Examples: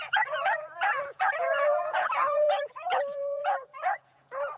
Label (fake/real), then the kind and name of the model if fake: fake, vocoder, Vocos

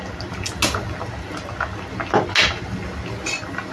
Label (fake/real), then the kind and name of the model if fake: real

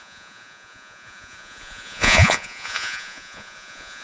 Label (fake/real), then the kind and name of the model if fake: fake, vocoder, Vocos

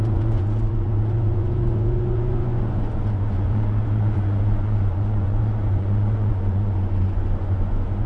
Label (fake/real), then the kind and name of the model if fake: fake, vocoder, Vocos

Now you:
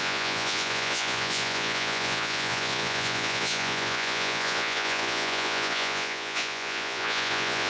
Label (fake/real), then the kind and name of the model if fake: fake, vocoder, Vocos